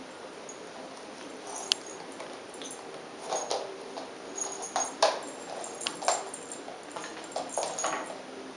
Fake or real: real